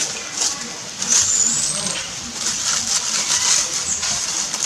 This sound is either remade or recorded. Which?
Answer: recorded